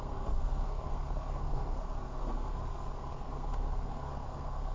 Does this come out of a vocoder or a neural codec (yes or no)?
yes